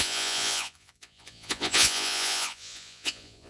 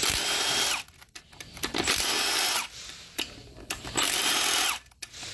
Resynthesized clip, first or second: first